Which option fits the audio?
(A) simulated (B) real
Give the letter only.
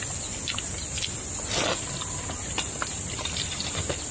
B